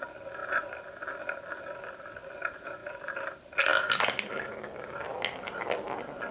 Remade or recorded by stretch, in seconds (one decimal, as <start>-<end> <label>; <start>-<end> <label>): 0.0-6.3 recorded